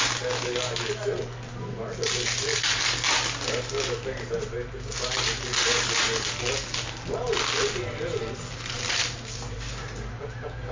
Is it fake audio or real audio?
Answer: real